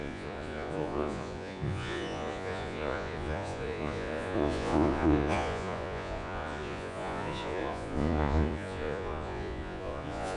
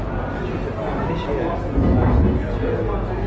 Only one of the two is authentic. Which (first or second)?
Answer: second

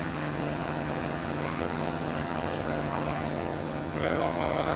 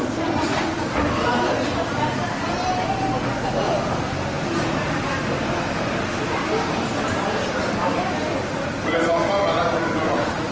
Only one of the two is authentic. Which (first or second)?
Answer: second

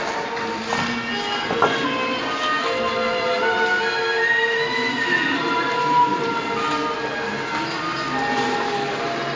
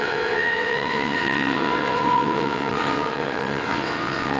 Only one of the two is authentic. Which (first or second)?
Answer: first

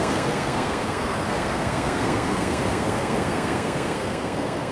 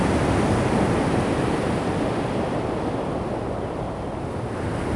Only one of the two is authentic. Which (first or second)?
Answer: second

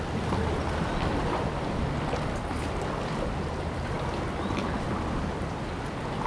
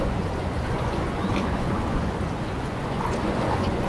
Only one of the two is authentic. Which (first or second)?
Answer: first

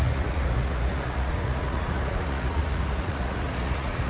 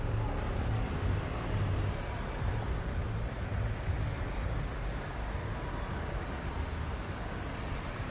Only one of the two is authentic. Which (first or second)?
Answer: second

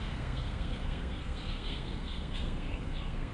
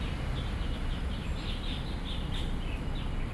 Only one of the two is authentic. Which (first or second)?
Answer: second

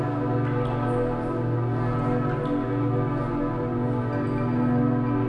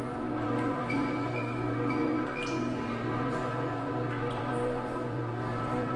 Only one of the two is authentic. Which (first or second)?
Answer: first